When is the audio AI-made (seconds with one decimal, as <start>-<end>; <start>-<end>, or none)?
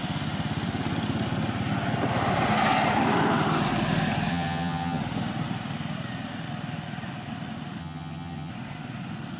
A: 4.3-5.0; 7.8-8.5